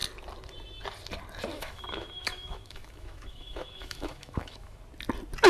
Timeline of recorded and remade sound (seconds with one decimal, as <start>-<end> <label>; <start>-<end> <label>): 0.0-1.5 recorded; 1.5-4.8 remade; 4.8-5.5 recorded